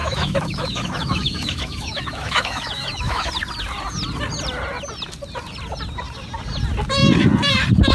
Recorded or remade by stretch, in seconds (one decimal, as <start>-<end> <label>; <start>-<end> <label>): 0.0-3.3 remade; 3.3-7.9 recorded